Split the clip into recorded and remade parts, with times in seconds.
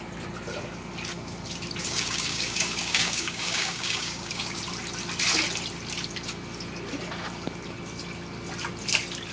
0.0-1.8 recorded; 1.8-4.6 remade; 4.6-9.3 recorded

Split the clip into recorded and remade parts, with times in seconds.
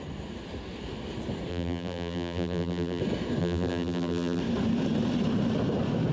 0.0-1.5 recorded; 1.5-3.0 remade; 3.0-3.4 recorded; 3.4-4.4 remade; 4.4-6.1 recorded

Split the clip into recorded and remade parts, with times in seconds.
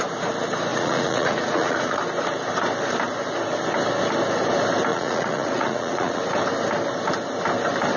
0.0-0.7 recorded; 0.7-2.0 remade; 2.0-4.9 recorded; 4.9-6.2 remade; 6.2-8.0 recorded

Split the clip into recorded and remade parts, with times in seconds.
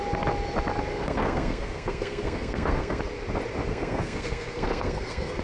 0.0-0.9 recorded; 0.9-3.0 remade; 3.0-3.7 recorded; 3.7-5.4 remade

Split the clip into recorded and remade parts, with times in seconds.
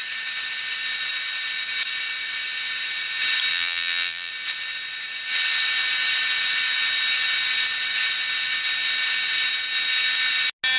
0.0-3.5 recorded; 3.5-4.3 remade; 4.3-10.8 recorded